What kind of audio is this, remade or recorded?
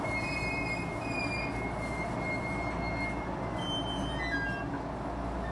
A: recorded